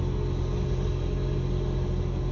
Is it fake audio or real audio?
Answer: real